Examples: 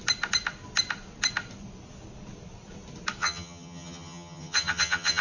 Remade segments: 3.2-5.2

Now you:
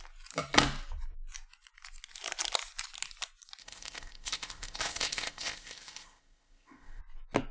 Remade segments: 3.6-7.0

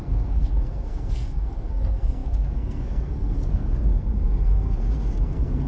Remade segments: 0.0-5.7

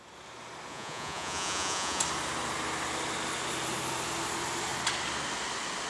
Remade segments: 0.7-2.0

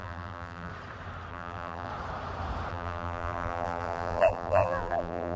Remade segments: 0.0-0.7; 1.3-1.9; 2.7-5.4

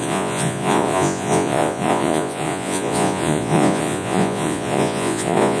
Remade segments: 0.0-5.6

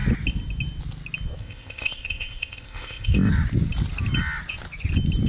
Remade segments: 1.4-3.3